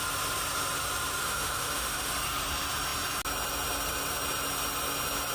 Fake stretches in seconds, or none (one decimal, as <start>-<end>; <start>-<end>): 1.2-2.1